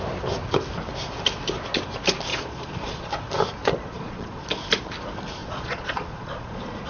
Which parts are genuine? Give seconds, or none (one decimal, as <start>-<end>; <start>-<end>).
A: 0.0-2.3; 3.1-3.6; 4.4-5.4